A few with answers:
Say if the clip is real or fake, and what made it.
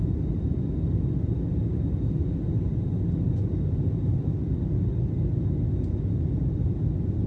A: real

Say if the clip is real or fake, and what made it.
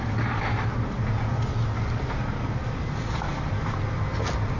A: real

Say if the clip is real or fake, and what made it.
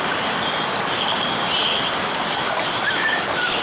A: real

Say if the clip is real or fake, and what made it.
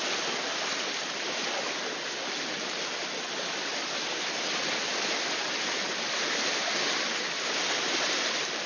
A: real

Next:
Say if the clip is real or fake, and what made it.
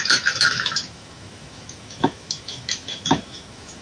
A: fake, autoencoder, DAC-VAE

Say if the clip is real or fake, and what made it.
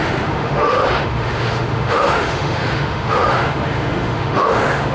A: fake, autoencoder, DAC-VAE